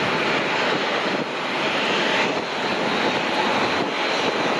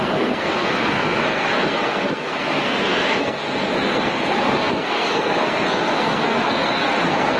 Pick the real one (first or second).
first